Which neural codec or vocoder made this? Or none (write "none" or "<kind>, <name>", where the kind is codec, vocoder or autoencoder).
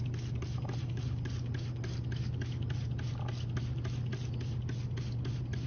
none